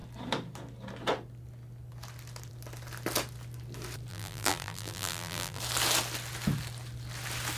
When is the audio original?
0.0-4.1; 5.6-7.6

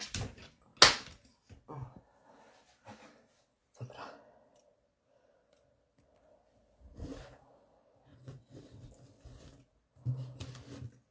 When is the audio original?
0.0-8.1; 8.9-11.1